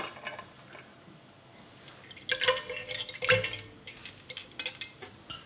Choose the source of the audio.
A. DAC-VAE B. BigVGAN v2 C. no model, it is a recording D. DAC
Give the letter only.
C